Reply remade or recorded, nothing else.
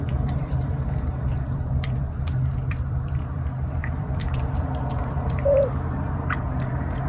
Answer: remade